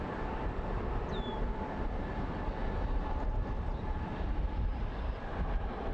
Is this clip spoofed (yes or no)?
yes